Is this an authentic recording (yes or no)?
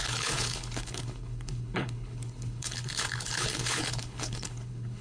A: no